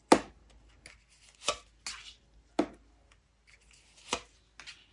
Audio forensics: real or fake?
real